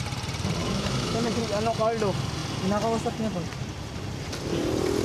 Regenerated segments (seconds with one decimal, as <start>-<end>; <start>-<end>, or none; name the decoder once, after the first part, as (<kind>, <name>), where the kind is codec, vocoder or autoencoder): 0.6-1.4 (autoencoder, DAC-VAE)